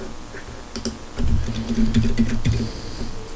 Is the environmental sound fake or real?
real